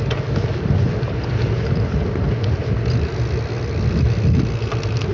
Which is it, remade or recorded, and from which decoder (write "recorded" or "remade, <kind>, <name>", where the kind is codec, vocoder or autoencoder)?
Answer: recorded